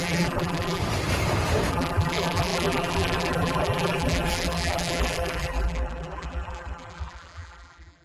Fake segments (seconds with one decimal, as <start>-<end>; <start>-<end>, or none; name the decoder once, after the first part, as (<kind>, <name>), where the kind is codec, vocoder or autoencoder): 0.0-0.8 (vocoder, BigVGAN v2); 1.7-8.0